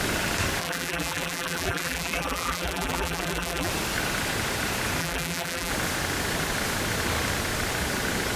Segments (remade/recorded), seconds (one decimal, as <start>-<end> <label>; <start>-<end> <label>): 0.0-0.6 recorded; 0.6-3.7 remade; 3.7-5.0 recorded; 5.0-5.7 remade; 5.7-8.4 recorded